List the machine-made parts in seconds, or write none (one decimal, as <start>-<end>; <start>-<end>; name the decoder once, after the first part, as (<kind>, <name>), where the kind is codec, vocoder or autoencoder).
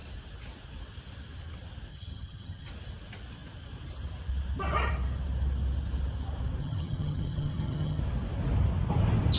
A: 1.9-2.7 (vocoder, HiFi-GAN); 6.6-8.0